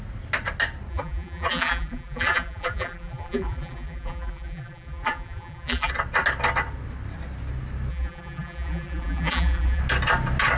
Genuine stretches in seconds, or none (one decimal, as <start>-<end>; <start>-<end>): 0.0-0.9; 5.9-7.9; 9.8-10.6